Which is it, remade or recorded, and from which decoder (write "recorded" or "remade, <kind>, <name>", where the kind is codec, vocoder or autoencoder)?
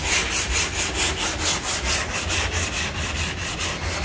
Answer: recorded